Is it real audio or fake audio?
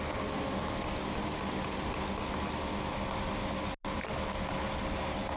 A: real